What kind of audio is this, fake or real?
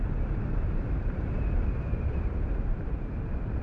fake